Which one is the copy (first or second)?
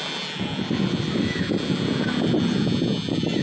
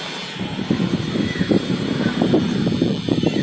second